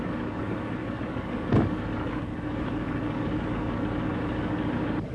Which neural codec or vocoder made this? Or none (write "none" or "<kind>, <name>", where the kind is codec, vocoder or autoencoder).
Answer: codec, DAC